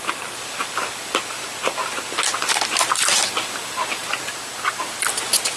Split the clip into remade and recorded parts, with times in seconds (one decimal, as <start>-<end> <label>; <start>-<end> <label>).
0.0-5.6 recorded